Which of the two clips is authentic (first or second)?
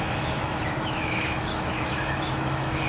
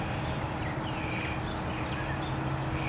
second